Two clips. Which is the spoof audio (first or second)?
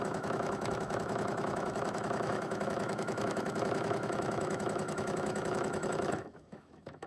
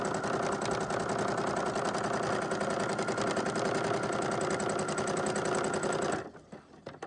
first